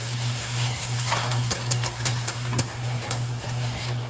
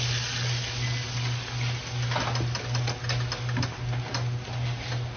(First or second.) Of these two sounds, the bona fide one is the second